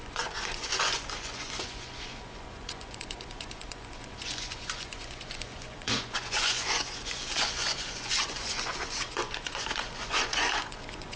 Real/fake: fake